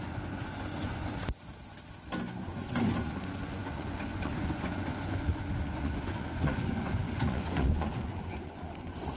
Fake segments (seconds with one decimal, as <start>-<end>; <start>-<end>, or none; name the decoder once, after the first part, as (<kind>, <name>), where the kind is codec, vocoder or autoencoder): 0.0-1.4 (vocoder, Vocos); 2.4-9.2